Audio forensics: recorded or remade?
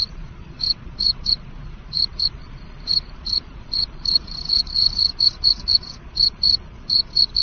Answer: remade